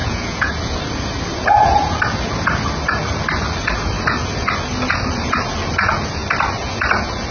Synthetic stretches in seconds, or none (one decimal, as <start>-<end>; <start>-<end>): 0.0-0.6